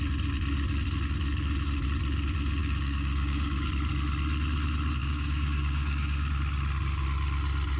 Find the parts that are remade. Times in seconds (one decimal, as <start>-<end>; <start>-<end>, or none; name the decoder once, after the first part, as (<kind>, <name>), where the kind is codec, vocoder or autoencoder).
2.6-3.7 (codec, DAC); 5.0-6.3